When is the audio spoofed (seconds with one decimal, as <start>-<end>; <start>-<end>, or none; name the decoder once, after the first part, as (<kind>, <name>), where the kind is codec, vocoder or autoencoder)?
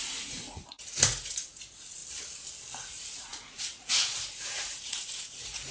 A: 0.0-2.0 (vocoder, Vocos); 2.8-5.7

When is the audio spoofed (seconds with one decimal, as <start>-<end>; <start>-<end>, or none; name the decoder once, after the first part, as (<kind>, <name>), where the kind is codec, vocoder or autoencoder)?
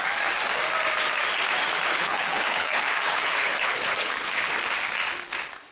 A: 1.9-4.5 (codec, HILCodec)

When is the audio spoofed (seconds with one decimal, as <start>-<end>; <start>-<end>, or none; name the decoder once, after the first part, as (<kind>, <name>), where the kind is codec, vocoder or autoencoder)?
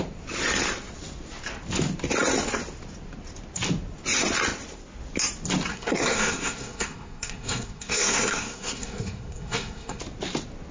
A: 5.7-10.0 (codec, SNAC)